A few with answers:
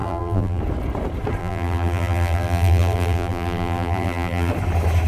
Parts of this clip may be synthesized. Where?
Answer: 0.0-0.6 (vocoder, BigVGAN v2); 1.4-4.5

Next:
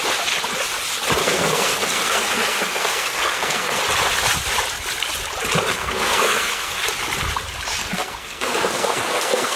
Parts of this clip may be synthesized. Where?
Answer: 1.2-3.8 (codec, SNAC); 5.7-6.8; 7.8-9.6